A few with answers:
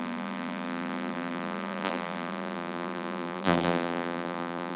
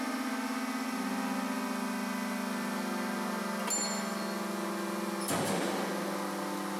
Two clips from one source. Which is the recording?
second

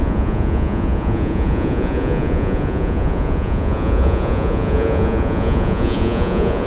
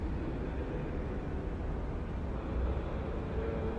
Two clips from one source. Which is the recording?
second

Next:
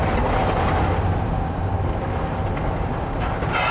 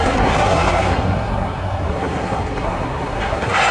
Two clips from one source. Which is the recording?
first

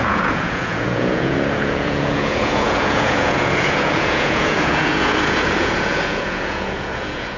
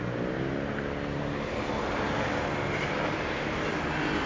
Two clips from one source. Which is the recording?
second